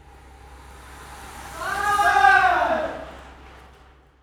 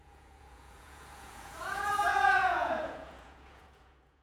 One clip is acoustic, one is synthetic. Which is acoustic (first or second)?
first